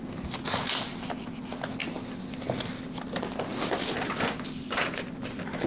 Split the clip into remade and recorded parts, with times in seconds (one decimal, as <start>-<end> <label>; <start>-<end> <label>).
0.0-3.5 recorded; 3.5-5.7 remade

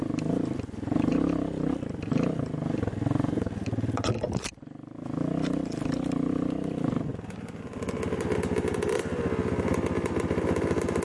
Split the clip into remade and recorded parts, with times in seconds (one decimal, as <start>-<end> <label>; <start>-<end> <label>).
0.0-11.0 recorded

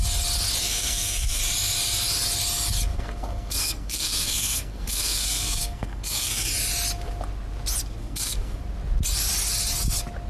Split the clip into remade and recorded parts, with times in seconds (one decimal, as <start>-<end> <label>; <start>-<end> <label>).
0.0-0.6 recorded; 0.6-1.4 remade; 1.4-2.9 recorded; 2.9-6.5 remade; 6.5-8.0 recorded; 8.0-8.6 remade; 8.6-10.3 recorded

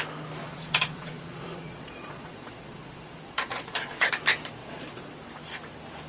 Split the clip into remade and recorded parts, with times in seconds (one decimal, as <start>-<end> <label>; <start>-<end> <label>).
0.0-0.4 recorded; 0.4-4.1 remade; 4.1-4.6 recorded; 4.6-5.2 remade; 5.2-6.1 recorded

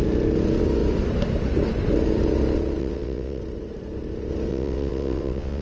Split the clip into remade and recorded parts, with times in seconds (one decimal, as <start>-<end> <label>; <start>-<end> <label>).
0.0-2.8 recorded; 2.8-3.4 remade; 3.4-4.5 recorded; 4.5-5.6 remade

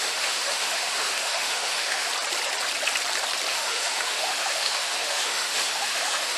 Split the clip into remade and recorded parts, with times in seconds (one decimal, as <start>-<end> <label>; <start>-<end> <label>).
0.0-2.1 remade; 2.1-3.5 recorded; 3.5-6.4 remade

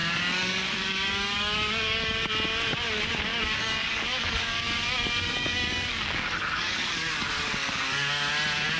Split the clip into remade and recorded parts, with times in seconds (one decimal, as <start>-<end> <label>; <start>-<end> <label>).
0.0-2.3 remade; 2.3-3.3 recorded; 3.3-8.3 remade; 8.3-8.8 recorded

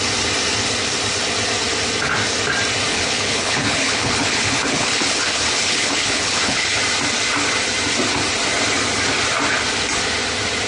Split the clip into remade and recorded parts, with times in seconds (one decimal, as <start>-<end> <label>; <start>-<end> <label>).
0.0-2.9 recorded; 2.9-6.8 remade; 6.8-10.7 recorded